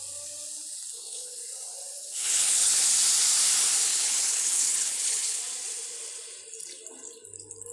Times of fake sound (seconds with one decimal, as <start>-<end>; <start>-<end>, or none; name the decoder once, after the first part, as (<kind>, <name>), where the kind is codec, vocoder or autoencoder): 0.9-1.4 (codec, HILCodec); 2.0-2.8; 3.9-5.4